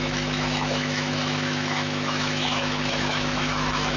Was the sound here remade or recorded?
remade